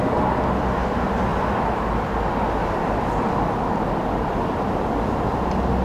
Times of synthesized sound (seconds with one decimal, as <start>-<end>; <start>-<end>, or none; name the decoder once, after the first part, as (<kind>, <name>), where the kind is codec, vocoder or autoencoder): none